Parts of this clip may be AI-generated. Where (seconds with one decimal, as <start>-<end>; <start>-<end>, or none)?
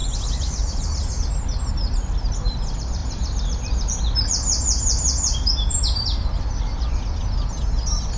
none